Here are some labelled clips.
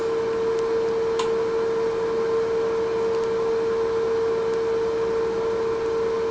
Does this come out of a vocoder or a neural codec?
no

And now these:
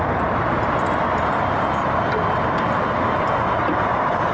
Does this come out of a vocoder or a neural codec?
no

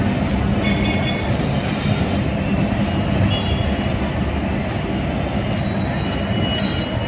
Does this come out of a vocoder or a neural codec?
no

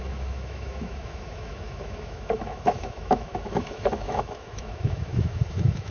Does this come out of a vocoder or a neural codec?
yes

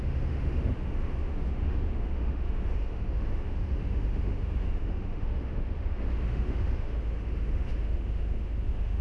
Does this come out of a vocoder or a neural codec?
yes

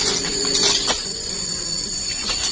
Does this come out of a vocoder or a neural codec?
yes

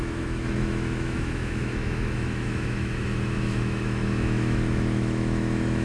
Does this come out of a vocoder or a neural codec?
yes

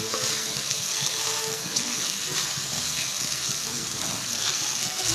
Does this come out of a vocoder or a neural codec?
yes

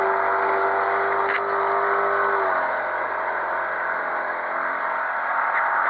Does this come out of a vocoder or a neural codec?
no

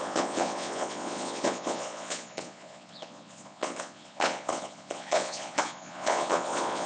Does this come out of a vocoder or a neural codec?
yes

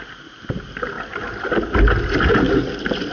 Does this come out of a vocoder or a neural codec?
no